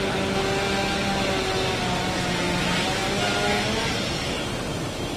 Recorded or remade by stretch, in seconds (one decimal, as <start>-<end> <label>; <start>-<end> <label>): 0.0-5.2 recorded